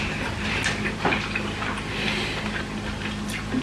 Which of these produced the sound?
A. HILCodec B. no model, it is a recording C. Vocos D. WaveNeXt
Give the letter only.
B